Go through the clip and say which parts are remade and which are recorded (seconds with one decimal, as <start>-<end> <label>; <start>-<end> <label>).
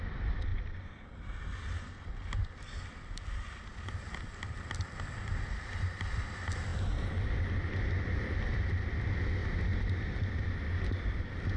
0.0-11.6 recorded